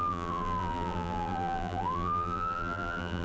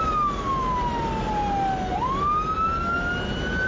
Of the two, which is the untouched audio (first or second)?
second